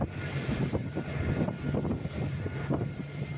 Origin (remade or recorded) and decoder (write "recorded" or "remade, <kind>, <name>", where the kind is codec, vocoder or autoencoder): remade, vocoder, BigVGAN v2